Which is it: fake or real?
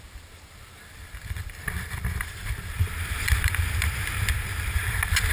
fake